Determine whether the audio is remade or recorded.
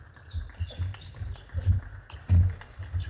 recorded